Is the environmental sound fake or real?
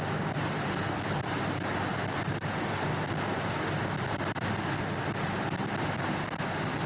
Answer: real